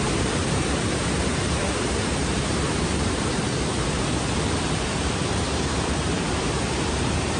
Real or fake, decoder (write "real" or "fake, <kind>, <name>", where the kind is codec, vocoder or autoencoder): fake, vocoder, BigVGAN v2